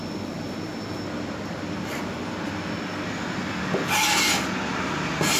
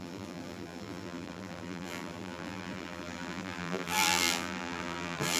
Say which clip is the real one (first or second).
first